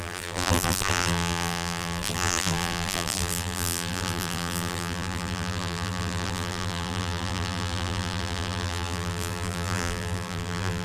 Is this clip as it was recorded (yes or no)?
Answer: no